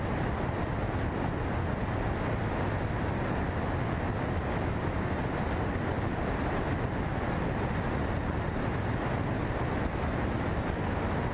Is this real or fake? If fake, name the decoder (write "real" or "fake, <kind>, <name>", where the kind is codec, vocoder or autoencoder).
real